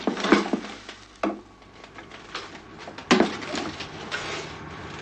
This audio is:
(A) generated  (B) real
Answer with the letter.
B